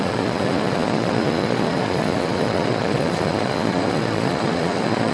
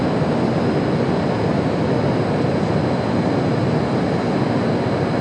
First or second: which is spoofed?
first